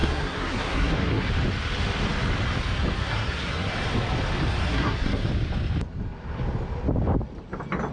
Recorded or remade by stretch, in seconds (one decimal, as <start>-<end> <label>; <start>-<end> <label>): 0.0-1.3 remade; 1.3-3.0 recorded; 3.0-3.7 remade; 3.7-4.6 recorded; 4.6-5.3 remade; 5.3-7.9 recorded